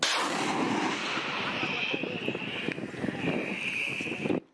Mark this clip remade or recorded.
recorded